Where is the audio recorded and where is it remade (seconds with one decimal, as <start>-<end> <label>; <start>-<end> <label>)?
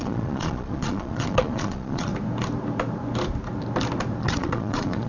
0.0-2.1 remade; 2.1-4.2 recorded; 4.2-5.1 remade